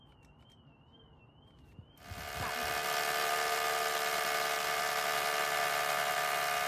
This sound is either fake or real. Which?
real